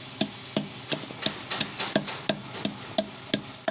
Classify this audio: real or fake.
real